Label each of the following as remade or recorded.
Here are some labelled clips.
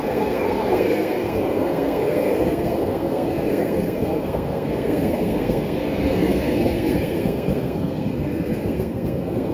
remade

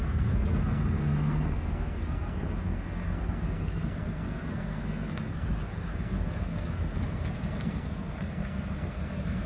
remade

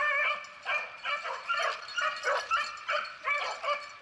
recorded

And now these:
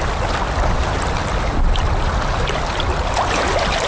recorded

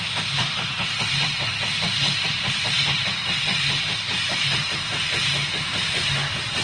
recorded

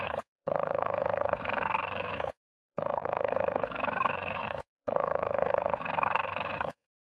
remade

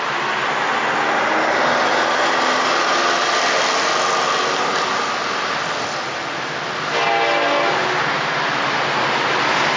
recorded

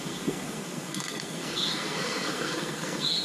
remade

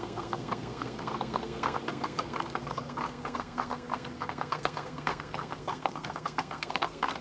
remade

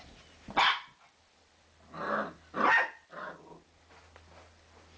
recorded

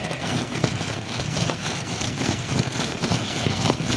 remade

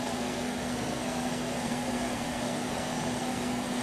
remade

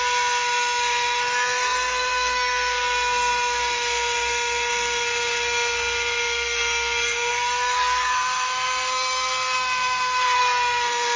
remade